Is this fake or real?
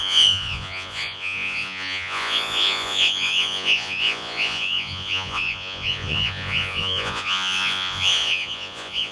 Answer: fake